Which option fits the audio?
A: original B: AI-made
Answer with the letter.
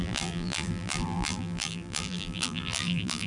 B